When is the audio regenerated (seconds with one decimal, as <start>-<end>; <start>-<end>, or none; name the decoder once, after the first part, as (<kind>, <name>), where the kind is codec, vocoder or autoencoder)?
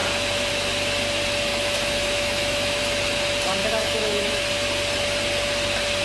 1.5-2.8 (autoencoder, DAC-VAE); 3.6-4.4